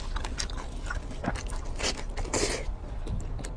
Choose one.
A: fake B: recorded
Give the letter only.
B